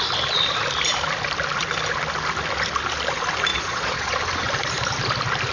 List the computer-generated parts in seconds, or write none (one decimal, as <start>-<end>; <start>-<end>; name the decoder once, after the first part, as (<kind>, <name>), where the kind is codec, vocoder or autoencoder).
3.5-4.2 (vocoder, Vocos)